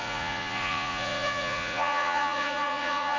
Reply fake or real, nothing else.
fake